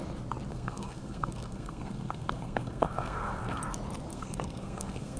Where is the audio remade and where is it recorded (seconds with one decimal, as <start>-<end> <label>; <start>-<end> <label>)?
0.0-0.5 recorded; 0.5-3.6 remade; 3.6-4.1 recorded; 4.1-5.2 remade